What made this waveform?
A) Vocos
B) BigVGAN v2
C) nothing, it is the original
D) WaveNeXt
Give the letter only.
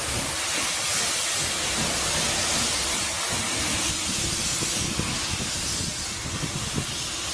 C